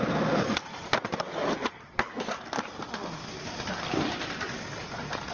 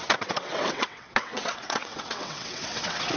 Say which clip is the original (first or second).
first